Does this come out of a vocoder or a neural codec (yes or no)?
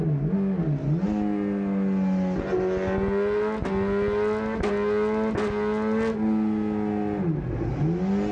no